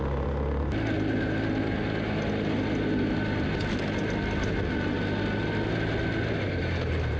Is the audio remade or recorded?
recorded